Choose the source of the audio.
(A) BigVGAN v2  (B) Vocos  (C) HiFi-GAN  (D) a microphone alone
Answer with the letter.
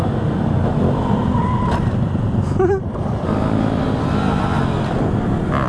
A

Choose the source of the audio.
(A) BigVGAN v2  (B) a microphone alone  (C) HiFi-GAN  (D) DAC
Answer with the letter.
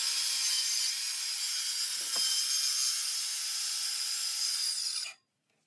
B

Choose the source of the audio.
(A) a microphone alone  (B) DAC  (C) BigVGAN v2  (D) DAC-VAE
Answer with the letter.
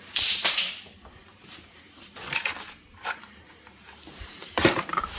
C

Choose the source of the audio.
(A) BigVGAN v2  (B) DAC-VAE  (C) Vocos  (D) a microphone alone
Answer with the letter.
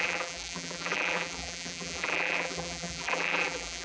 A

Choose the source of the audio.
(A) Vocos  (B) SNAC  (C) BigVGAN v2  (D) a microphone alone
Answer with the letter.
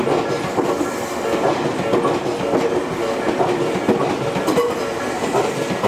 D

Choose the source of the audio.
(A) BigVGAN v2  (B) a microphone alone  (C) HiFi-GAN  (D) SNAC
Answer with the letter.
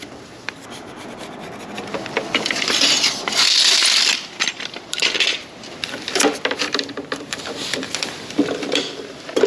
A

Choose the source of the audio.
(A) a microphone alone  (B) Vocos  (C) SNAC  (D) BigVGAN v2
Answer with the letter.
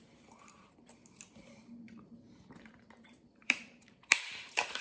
D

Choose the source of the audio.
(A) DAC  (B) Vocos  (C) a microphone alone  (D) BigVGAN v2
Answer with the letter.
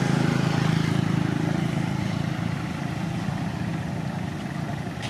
C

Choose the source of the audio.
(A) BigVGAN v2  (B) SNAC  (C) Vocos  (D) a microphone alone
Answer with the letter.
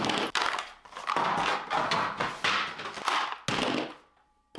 D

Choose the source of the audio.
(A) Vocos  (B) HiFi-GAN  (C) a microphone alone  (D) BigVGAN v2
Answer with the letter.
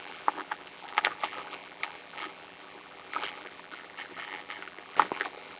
D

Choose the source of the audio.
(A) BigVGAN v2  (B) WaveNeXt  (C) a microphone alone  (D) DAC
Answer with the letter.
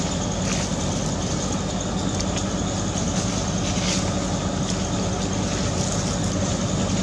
C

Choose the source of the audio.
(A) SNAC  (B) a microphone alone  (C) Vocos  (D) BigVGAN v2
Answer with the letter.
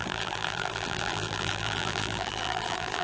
D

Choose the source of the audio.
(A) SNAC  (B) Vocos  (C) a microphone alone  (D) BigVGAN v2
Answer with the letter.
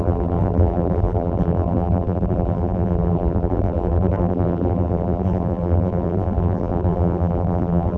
D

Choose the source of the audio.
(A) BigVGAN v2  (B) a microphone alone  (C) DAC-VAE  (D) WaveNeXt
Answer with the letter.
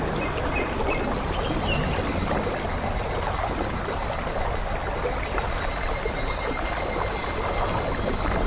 B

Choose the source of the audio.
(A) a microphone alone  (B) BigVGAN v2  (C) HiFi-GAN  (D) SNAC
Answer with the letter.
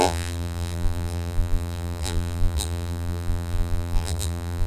B